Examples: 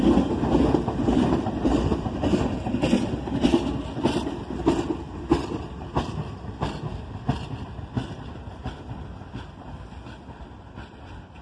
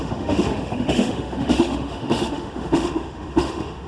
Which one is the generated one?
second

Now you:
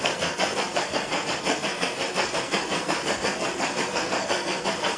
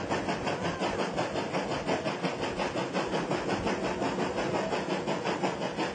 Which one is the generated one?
first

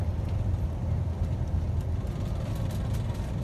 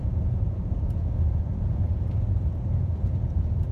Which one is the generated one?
second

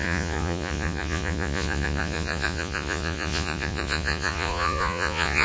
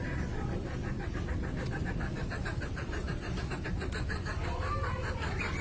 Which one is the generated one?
first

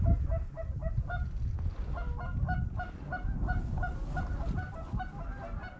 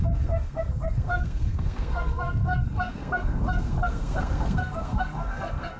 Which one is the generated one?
second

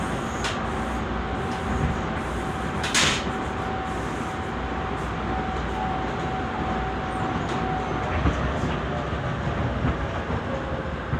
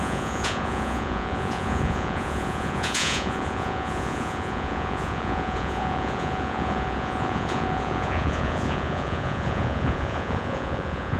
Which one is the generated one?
second